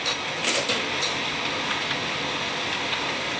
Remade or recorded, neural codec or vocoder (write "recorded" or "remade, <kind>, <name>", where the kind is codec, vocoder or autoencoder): recorded